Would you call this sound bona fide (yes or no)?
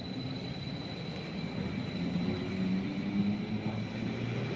yes